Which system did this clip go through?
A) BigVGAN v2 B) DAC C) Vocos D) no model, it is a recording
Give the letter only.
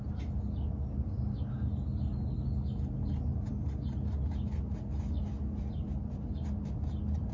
D